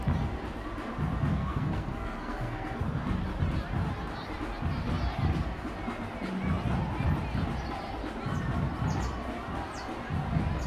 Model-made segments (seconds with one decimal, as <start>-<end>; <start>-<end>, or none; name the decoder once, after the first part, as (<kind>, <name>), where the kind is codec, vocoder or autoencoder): 1.3-2.8 (codec, SNAC)